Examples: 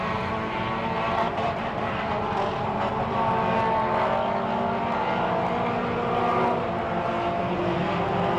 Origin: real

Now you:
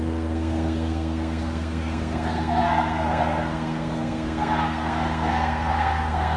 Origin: fake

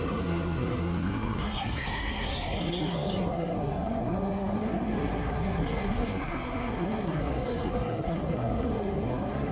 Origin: fake